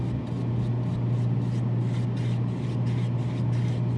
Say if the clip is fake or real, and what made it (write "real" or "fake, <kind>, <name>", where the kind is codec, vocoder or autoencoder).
real